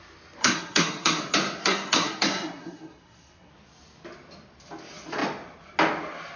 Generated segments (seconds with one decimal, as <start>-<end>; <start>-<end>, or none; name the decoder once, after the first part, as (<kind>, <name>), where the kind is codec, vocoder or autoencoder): 0.4-1.2 (codec, SNAC); 1.6-3.5